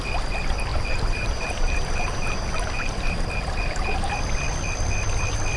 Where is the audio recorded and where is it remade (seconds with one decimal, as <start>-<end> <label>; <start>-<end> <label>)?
0.0-0.7 recorded; 0.7-4.1 remade; 4.1-5.6 recorded

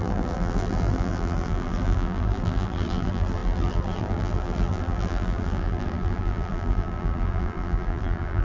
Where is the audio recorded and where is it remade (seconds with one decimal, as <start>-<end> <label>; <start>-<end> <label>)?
0.0-8.4 remade

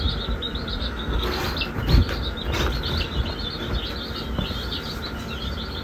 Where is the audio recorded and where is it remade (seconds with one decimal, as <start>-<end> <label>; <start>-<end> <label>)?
0.0-0.8 recorded; 0.8-1.4 remade; 1.4-5.8 recorded

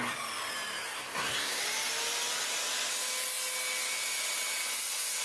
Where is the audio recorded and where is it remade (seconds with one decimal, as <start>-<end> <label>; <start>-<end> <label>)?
0.0-0.8 recorded; 0.8-1.6 remade; 1.6-5.2 recorded

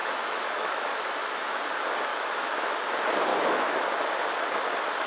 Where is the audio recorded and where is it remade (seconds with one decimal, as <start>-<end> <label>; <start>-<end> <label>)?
0.0-1.6 remade; 1.6-2.1 recorded; 2.1-2.8 remade; 2.8-3.3 recorded; 3.3-3.9 remade; 3.9-5.1 recorded

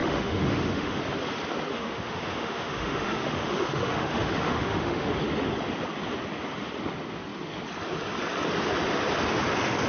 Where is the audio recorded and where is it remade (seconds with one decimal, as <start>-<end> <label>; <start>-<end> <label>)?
0.0-1.0 remade; 1.0-1.7 recorded; 1.7-5.1 remade; 5.1-9.9 recorded